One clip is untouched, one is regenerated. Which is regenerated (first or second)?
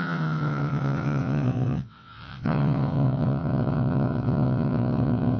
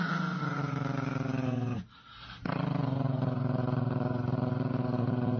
first